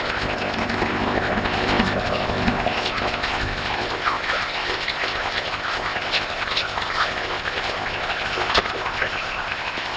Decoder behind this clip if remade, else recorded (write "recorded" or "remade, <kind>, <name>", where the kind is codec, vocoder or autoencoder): remade, codec, ZipCodec